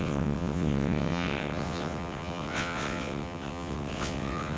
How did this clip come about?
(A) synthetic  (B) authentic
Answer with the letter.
A